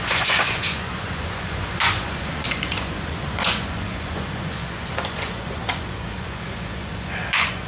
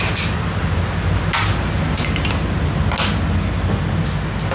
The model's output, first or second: first